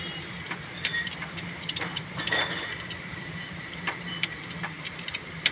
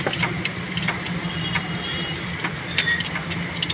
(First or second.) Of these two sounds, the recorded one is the second